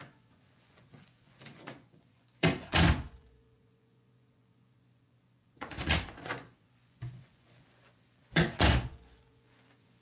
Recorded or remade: remade